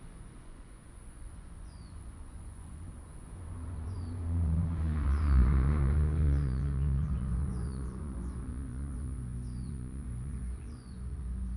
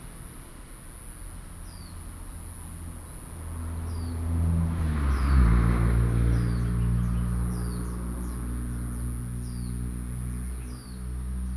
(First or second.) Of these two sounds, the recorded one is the second